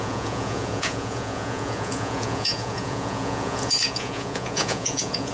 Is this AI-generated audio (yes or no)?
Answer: yes